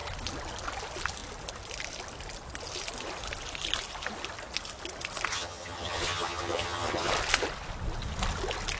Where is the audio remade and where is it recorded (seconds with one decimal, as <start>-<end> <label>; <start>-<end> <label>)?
0.0-5.3 recorded; 5.3-7.1 remade; 7.1-8.8 recorded